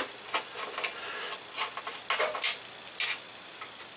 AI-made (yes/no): no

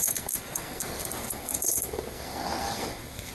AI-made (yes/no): yes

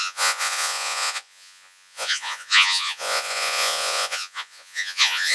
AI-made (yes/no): yes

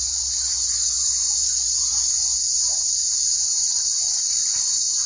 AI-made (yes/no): no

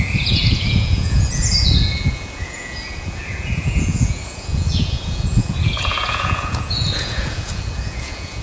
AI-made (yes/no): yes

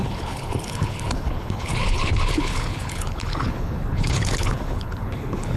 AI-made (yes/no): yes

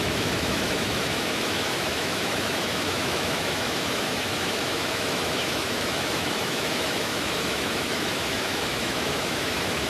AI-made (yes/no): yes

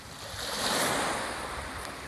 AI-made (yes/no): no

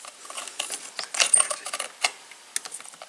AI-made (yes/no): no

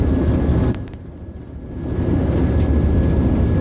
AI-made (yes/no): no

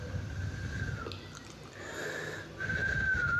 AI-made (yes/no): no